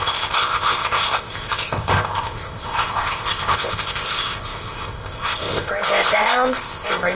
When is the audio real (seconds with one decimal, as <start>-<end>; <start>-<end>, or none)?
none